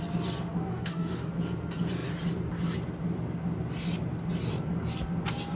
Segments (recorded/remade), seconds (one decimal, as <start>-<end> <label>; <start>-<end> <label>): 0.0-0.7 recorded; 0.7-1.3 remade; 1.3-5.6 recorded